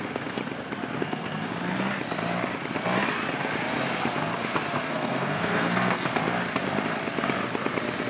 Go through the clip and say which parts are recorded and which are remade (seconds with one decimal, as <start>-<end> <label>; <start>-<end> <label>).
0.0-0.4 remade; 0.4-1.0 recorded; 1.0-1.5 remade; 1.5-4.9 recorded; 4.9-6.1 remade; 6.1-8.1 recorded